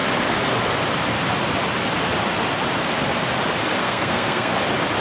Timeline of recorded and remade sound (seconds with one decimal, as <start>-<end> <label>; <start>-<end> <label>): 0.0-3.8 recorded; 3.8-4.5 remade; 4.5-5.0 recorded